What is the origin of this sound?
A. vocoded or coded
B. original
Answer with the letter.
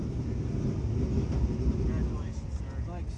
B